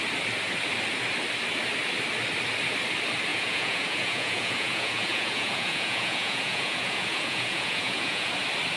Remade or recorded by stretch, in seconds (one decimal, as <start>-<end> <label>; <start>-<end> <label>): 0.0-3.3 recorded; 3.3-8.3 remade; 8.3-8.8 recorded